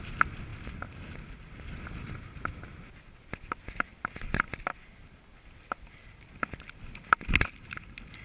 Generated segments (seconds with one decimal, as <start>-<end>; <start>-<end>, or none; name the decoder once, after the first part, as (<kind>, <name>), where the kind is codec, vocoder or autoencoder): none